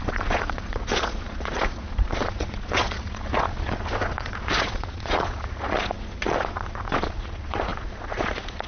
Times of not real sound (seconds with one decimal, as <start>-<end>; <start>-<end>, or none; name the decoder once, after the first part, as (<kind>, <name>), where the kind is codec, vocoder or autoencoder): 0.0-8.7 (vocoder, Vocos)

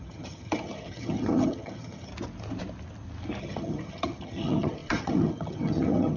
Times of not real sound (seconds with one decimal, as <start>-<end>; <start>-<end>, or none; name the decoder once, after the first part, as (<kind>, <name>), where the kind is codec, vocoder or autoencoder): 0.0-2.1 (vocoder, HiFi-GAN); 3.4-6.2

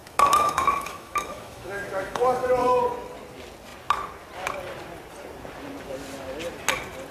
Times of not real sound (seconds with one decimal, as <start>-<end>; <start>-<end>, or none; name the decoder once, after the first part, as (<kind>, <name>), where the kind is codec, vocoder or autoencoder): 0.0-2.8 (autoencoder, DAC-VAE)

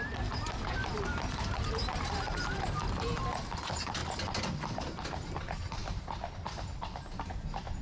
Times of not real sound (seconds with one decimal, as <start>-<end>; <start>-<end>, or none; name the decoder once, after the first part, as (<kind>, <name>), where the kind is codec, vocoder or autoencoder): 0.0-4.0 (vocoder, BigVGAN v2); 4.7-7.8

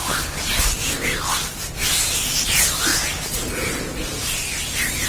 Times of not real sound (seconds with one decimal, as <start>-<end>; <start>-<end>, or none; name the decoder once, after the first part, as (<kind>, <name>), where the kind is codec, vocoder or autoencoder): none

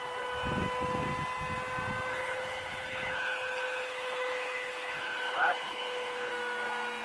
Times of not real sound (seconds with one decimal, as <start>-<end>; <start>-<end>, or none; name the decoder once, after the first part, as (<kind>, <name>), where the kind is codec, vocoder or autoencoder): 2.1-6.3 (codec, HILCodec)

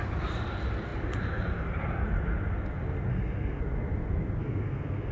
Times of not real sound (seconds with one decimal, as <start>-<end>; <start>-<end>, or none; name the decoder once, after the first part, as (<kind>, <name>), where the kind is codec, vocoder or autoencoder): 3.1-3.6 (codec, SNAC); 4.4-5.1